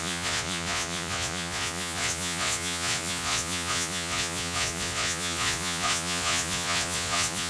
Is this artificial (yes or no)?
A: yes